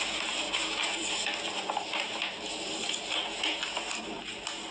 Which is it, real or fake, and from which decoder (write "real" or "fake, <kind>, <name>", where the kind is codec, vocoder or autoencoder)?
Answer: real